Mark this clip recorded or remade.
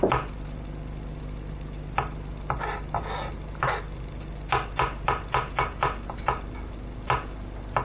recorded